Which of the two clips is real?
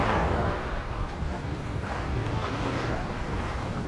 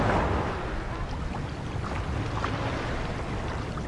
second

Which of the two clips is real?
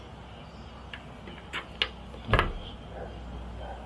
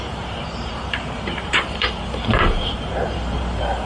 first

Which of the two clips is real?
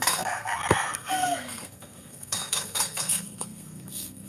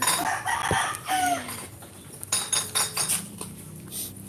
second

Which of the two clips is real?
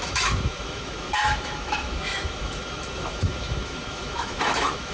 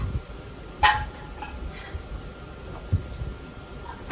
second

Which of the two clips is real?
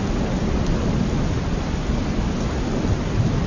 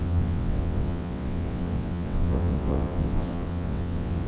first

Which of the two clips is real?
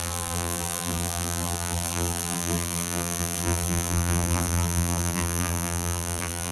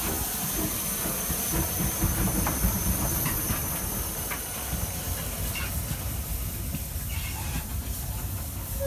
second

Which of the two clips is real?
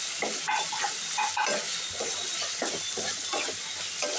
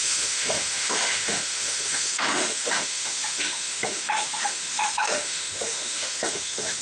first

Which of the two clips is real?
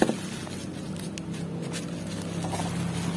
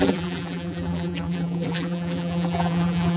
first